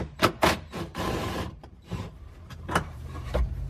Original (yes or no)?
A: no